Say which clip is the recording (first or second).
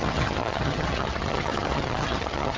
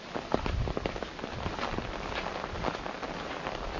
second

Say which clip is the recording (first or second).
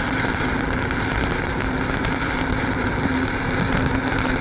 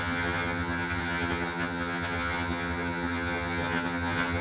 first